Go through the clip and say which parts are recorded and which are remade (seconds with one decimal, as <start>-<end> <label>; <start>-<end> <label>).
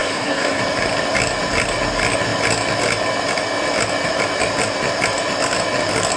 0.0-0.6 remade; 0.6-6.2 recorded